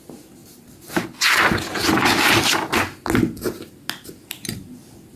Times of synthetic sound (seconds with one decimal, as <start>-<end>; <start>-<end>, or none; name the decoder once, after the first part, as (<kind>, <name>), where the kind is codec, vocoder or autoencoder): 0.4-1.2 (vocoder, BigVGAN v2); 1.8-2.7